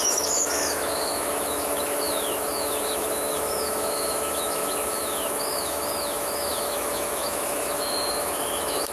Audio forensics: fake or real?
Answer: fake